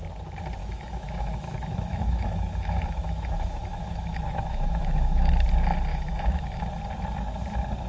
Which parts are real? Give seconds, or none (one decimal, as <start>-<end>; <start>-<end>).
0.0-0.6; 5.3-5.9; 6.6-7.9